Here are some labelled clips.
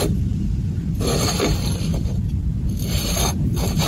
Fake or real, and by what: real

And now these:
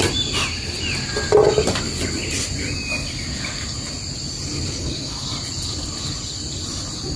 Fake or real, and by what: real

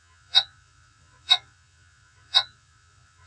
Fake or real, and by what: fake, vocoder, Vocos